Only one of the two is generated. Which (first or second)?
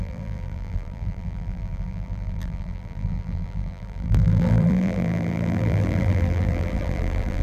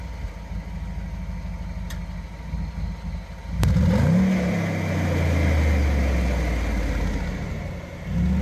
first